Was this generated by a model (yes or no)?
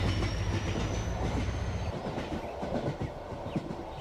no